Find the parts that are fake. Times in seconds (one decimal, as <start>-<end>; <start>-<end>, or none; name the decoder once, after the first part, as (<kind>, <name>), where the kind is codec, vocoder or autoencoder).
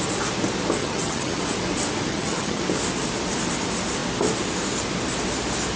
0.8-1.4 (vocoder, HiFi-GAN); 2.1-2.6